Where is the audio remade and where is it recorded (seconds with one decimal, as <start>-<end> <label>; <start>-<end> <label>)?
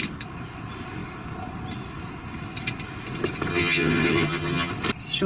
0.0-3.5 recorded; 3.5-4.7 remade; 4.7-5.3 recorded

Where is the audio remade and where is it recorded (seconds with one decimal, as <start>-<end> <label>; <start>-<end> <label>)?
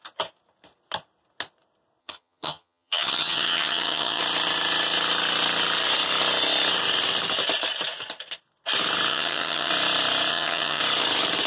0.0-2.0 recorded; 2.0-4.2 remade; 4.2-9.1 recorded; 9.1-9.7 remade; 9.7-10.3 recorded; 10.3-10.8 remade; 10.8-11.5 recorded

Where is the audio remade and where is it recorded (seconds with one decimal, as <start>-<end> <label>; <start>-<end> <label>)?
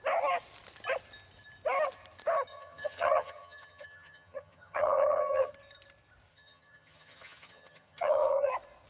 0.0-2.5 recorded; 2.5-5.5 remade; 5.5-6.3 recorded; 6.3-8.5 remade; 8.5-8.9 recorded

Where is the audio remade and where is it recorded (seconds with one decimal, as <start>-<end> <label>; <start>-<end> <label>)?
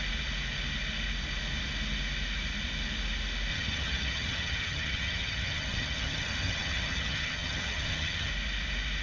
0.0-3.5 recorded; 3.5-8.3 remade; 8.3-9.0 recorded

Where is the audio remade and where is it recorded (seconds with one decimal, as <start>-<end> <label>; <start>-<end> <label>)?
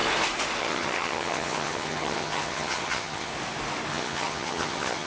0.0-0.6 recorded; 0.6-3.3 remade; 3.3-3.9 recorded; 3.9-5.1 remade